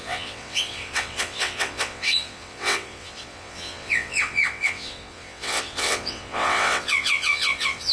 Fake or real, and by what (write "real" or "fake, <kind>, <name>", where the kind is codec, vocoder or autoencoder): fake, vocoder, WaveNeXt